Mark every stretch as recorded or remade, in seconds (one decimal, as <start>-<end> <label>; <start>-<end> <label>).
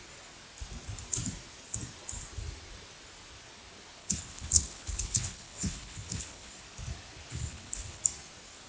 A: 0.0-4.0 recorded; 4.0-6.5 remade; 6.5-7.3 recorded; 7.3-8.0 remade; 8.0-8.7 recorded